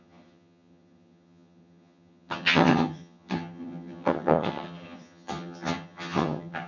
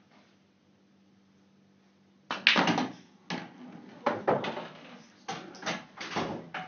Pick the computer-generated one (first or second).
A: first